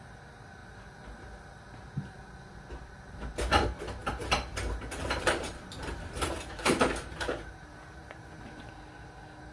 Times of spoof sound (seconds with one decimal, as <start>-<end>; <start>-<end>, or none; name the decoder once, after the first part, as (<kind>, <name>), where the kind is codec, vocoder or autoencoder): 0.6-1.4 (vocoder, BigVGAN v2); 4.0-8.7